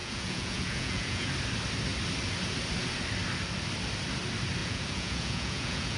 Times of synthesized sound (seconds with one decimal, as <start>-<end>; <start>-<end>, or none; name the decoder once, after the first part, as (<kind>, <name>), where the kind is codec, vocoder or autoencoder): 0.0-1.3 (vocoder, Vocos); 4.6-6.0